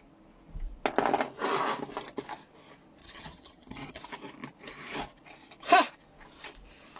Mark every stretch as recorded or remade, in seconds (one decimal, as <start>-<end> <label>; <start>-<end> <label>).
0.0-3.0 recorded; 3.0-4.0 remade; 4.0-7.0 recorded